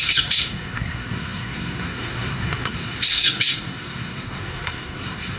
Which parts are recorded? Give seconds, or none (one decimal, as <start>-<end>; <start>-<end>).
none